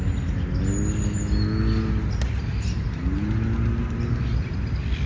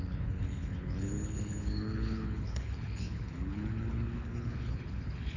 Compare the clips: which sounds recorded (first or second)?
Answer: first